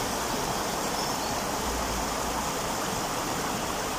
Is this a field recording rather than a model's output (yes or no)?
no